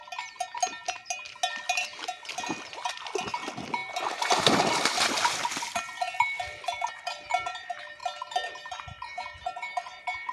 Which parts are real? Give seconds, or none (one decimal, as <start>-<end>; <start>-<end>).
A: 0.0-10.3